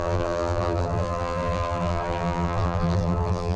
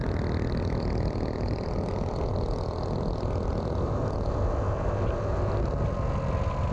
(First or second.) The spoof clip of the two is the first